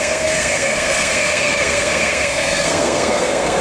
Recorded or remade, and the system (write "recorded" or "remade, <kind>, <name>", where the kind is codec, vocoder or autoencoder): remade, codec, SNAC